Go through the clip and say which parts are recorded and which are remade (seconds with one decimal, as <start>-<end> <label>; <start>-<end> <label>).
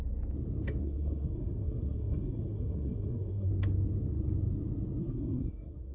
0.0-0.8 recorded; 0.8-3.5 remade; 3.5-5.0 recorded; 5.0-5.9 remade